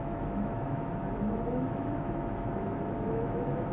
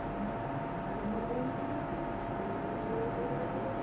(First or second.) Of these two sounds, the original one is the second